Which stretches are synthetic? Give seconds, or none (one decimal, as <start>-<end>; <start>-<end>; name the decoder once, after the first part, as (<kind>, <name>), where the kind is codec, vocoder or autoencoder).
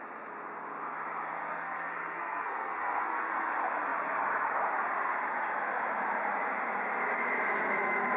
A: 1.3-3.5 (codec, SNAC)